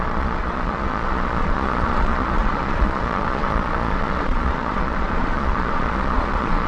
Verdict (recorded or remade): remade